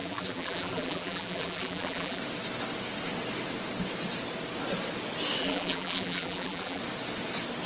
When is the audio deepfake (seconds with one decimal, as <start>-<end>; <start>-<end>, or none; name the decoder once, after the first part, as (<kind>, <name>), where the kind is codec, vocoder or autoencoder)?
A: 0.0-2.2 (vocoder, BigVGAN v2); 5.4-6.8